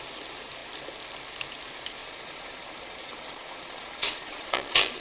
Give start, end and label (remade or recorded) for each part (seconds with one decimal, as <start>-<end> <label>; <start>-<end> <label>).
0.0-2.0 recorded; 2.0-5.0 remade